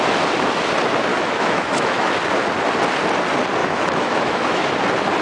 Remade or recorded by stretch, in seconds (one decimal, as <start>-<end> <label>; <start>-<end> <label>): 0.0-1.1 recorded; 1.1-2.1 remade; 2.1-3.6 recorded; 3.6-4.7 remade; 4.7-5.2 recorded

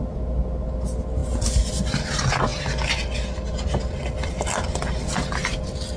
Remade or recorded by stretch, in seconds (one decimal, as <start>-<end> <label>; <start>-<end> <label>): 0.0-6.0 recorded

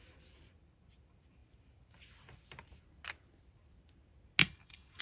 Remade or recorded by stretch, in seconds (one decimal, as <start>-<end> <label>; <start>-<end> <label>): 0.0-4.4 recorded; 4.4-5.0 remade

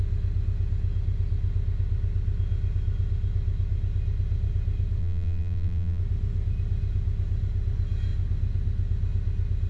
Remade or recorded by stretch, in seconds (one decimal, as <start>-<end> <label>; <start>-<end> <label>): 0.0-5.0 recorded; 5.0-6.0 remade; 6.0-9.7 recorded

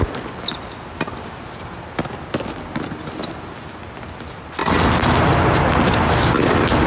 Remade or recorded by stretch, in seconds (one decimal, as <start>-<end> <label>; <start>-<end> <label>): 0.0-6.9 recorded

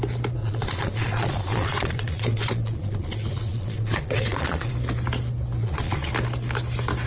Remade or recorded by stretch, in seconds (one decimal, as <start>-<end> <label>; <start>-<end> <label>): 0.0-0.4 recorded; 0.4-4.7 remade; 4.7-5.6 recorded; 5.6-6.1 remade; 6.1-7.1 recorded

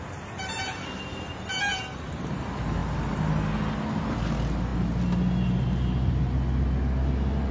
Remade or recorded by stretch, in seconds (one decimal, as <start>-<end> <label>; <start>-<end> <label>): 0.0-7.5 recorded

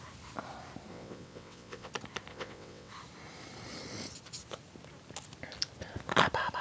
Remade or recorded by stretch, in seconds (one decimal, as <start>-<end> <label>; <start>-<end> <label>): 0.0-0.9 recorded; 0.9-1.9 remade; 1.9-2.3 recorded; 2.3-2.9 remade; 2.9-6.6 recorded